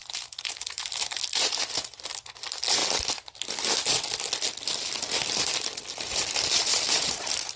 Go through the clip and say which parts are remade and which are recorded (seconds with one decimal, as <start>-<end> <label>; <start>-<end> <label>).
0.0-2.8 remade; 2.8-6.5 recorded; 6.5-7.6 remade